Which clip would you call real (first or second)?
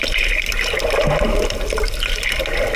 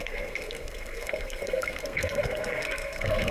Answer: first